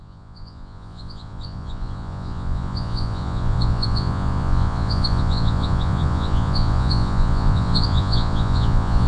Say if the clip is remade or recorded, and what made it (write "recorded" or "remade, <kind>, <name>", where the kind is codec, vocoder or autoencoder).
remade, vocoder, Vocos